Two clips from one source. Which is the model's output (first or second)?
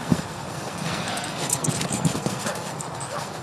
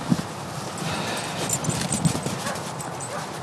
first